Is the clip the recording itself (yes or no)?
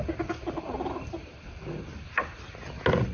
yes